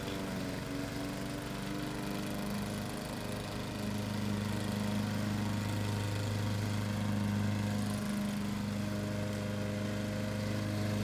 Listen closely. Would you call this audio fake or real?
real